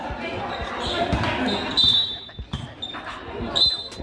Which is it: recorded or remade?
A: recorded